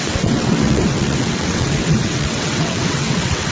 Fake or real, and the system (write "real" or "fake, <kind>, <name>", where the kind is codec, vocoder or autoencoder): fake, vocoder, WaveNeXt